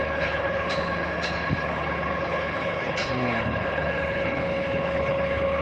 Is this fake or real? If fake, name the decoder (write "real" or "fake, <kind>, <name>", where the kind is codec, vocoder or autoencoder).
fake, codec, HILCodec